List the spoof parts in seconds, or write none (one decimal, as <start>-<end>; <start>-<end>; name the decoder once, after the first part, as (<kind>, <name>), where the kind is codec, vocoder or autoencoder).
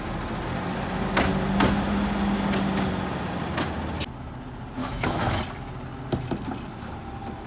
4.8-5.4 (autoencoder, DAC-VAE)